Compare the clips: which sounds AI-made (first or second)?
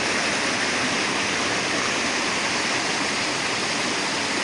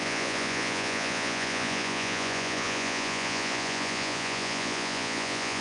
second